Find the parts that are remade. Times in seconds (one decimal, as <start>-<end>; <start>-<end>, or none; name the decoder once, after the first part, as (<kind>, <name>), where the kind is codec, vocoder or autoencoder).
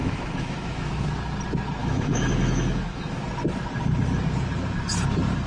0.0-0.9 (autoencoder, DAC-VAE); 1.8-3.2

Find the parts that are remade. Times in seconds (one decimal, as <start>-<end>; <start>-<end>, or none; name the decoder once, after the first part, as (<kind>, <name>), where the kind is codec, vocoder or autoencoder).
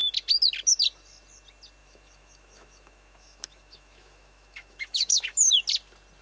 1.8-5.5 (autoencoder, DAC-VAE)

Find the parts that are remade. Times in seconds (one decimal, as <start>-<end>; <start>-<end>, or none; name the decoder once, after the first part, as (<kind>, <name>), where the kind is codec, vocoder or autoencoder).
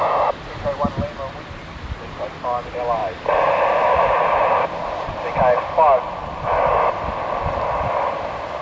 3.0-5.2 (vocoder, BigVGAN v2)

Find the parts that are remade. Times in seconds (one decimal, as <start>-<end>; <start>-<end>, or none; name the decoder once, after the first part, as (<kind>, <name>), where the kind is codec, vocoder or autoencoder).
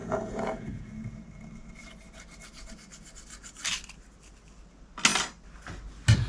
0.0-0.9 (vocoder, Vocos)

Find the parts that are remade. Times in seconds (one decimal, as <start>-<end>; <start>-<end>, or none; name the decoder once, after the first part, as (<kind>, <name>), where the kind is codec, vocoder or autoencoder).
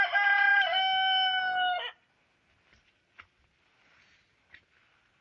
none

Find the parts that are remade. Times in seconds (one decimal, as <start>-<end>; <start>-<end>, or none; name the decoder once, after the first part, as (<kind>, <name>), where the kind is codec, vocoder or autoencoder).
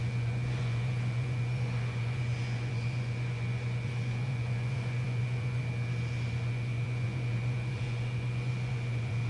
0.0-5.6 (vocoder, Vocos); 6.3-9.3